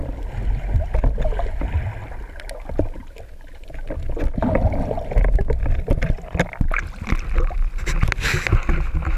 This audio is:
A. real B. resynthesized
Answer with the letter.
A